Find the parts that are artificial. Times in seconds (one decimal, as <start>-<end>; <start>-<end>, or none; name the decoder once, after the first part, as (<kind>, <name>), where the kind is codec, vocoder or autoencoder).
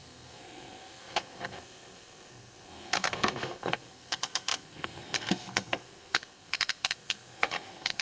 0.0-8.0 (codec, SNAC)